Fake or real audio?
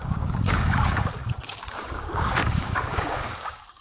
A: fake